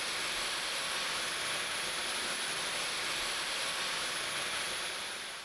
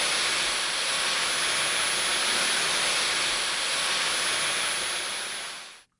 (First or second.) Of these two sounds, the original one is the second